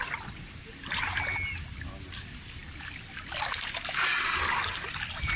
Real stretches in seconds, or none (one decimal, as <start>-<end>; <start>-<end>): 0.0-5.4